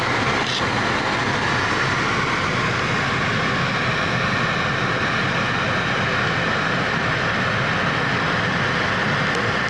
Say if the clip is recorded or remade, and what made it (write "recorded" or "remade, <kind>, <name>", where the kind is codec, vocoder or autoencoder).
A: recorded